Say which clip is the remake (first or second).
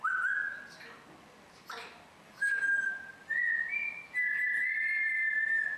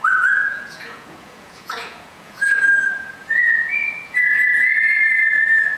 second